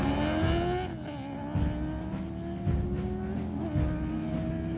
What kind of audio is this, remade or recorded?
recorded